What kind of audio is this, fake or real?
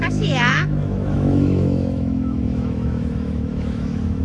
fake